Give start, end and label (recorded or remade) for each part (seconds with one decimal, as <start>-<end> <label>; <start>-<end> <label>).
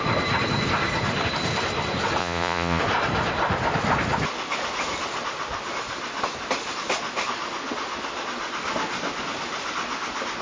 0.0-2.2 recorded; 2.2-2.8 remade; 2.8-10.4 recorded